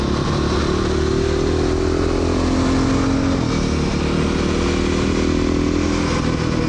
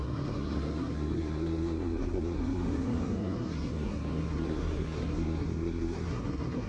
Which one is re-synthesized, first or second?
second